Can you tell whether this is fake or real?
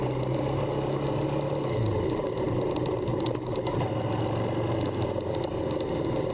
real